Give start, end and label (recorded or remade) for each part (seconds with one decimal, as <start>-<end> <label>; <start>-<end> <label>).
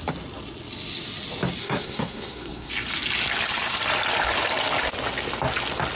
0.0-1.6 recorded; 1.6-2.7 remade; 2.7-6.0 recorded